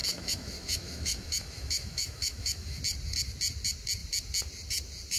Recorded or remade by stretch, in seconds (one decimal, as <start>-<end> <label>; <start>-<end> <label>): 0.0-2.8 remade; 2.8-5.2 recorded